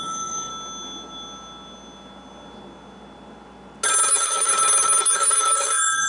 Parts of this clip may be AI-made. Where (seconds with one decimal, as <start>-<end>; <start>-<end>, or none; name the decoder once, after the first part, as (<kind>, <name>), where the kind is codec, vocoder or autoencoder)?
0.0-0.5 (autoencoder, DAC-VAE); 4.1-4.5; 5.0-6.1